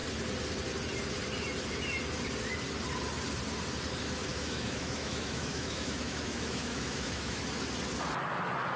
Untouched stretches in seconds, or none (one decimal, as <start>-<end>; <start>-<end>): 0.0-4.3; 7.4-8.8